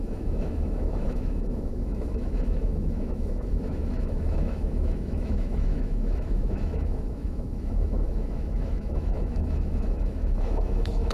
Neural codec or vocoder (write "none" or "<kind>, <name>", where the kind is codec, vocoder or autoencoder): autoencoder, DAC-VAE